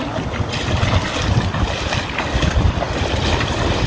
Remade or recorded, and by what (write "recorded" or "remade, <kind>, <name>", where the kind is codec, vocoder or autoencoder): recorded